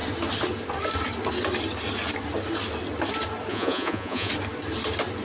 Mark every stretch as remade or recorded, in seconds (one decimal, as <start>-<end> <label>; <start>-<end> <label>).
0.0-3.5 recorded; 3.5-4.3 remade; 4.3-5.2 recorded